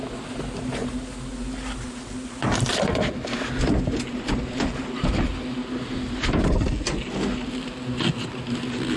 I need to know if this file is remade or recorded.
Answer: recorded